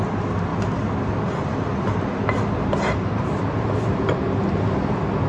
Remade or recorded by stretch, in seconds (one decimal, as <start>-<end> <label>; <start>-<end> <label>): 0.0-5.3 recorded